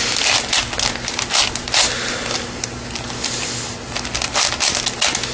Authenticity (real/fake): real